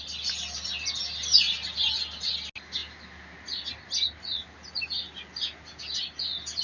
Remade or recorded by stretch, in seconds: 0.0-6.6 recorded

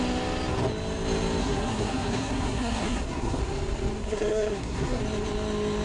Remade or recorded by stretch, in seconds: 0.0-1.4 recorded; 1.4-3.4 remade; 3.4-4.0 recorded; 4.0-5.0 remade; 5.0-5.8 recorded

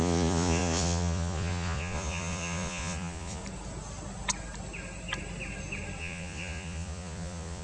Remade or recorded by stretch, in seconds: 0.0-3.4 remade; 3.4-6.0 recorded; 6.0-7.6 remade

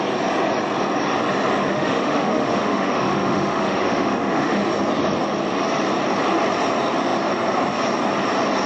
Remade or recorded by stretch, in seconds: 0.0-1.7 recorded; 1.7-4.6 remade; 4.6-8.7 recorded